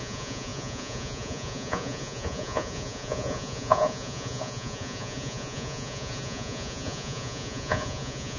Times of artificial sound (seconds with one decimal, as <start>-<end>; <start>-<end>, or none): 0.0-8.4